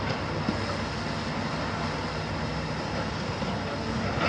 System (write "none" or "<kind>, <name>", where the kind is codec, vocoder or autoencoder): none